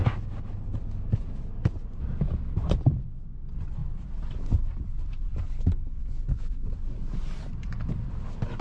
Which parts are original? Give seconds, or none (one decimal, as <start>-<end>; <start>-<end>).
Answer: 0.0-3.8; 5.3-6.0; 8.1-8.6